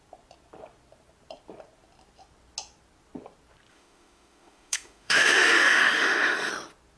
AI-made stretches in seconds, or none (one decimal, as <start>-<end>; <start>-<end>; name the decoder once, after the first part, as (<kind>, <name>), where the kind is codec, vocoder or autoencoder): 3.7-6.5 (autoencoder, DAC-VAE)